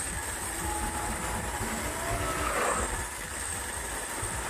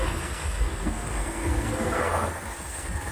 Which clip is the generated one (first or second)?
second